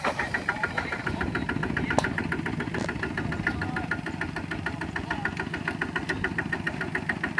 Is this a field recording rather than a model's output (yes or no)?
yes